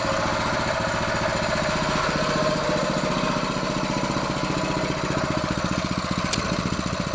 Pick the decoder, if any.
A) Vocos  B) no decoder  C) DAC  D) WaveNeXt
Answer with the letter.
B